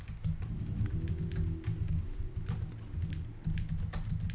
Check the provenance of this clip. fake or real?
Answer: real